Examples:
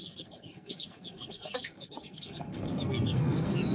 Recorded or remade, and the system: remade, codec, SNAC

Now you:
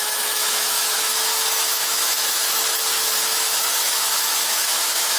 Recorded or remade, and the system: remade, autoencoder, DAC-VAE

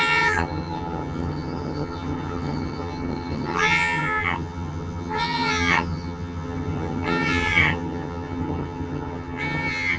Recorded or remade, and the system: remade, vocoder, HiFi-GAN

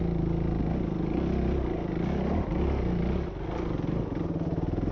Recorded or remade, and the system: recorded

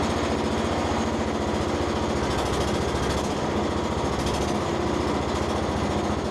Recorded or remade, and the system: recorded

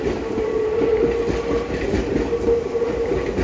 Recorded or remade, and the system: recorded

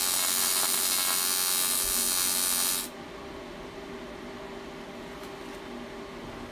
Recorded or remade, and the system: recorded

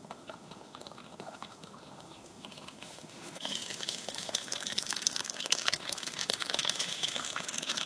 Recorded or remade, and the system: remade, autoencoder, DAC-VAE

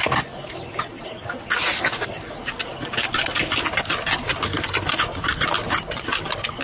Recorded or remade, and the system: recorded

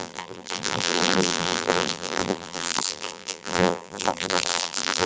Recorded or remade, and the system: remade, vocoder, BigVGAN v2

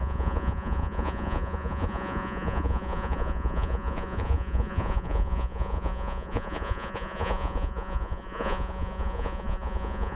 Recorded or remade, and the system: remade, vocoder, Vocos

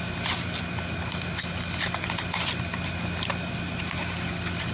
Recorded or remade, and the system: recorded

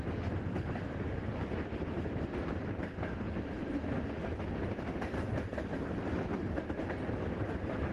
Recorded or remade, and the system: recorded